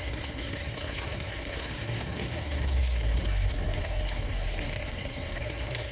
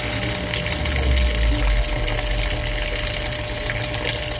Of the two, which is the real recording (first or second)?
second